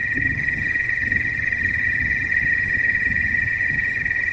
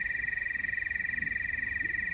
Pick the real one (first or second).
second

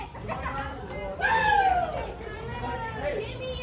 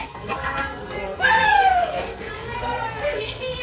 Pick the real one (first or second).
first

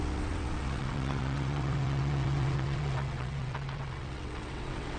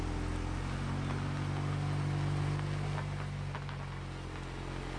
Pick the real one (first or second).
second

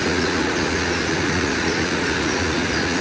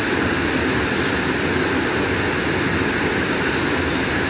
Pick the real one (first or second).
second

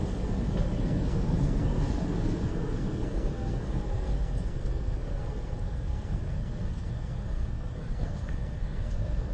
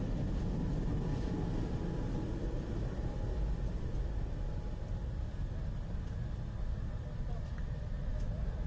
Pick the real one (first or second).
second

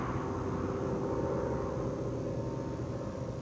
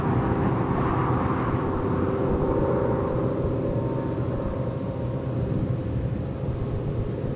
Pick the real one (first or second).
first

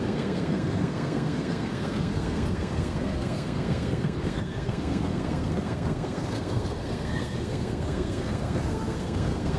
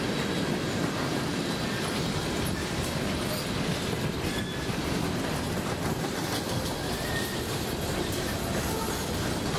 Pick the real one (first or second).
second